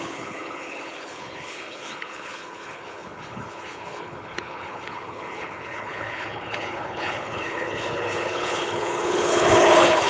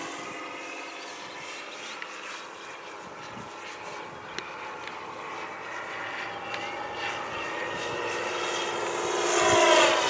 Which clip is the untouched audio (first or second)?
second